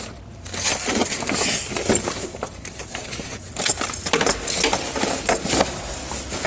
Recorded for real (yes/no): yes